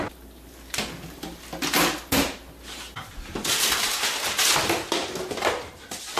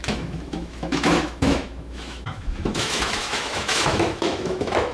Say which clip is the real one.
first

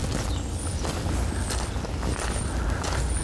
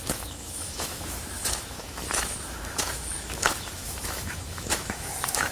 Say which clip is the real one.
first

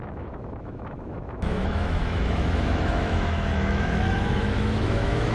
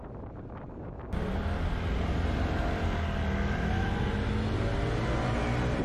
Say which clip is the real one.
second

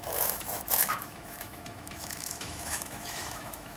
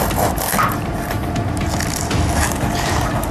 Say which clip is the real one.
second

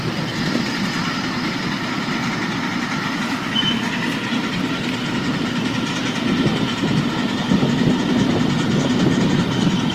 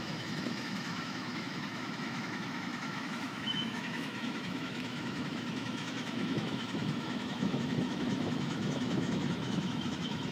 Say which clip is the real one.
first